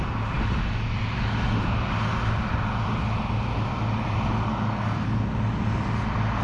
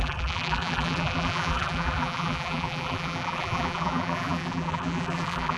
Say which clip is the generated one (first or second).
second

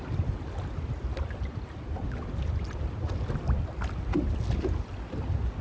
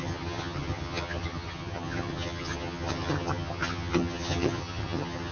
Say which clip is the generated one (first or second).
second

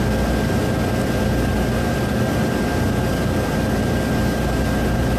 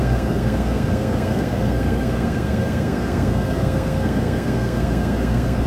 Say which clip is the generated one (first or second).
second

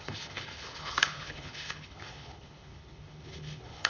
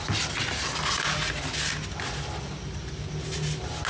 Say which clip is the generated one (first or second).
first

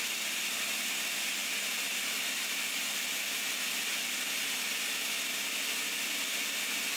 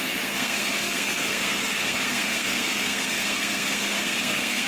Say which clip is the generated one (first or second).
second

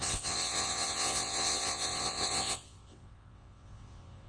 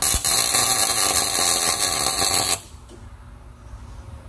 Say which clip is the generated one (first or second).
first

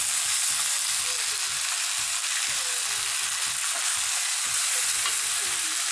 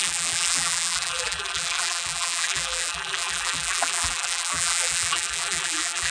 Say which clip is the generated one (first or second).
second